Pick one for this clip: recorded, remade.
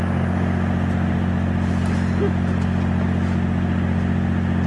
recorded